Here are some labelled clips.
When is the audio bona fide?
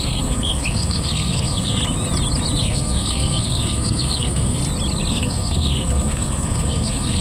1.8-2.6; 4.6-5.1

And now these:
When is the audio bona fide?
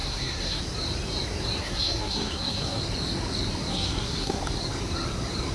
0.6-1.6; 2.8-3.7; 4.4-5.5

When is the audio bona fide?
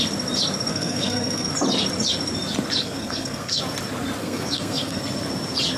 0.0-0.7; 1.5-2.8; 3.6-4.2; 5.0-5.8